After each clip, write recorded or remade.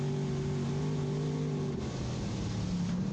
recorded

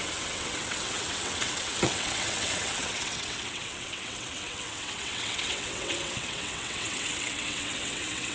remade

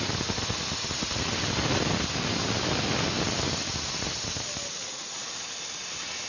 recorded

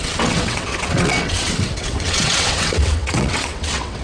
remade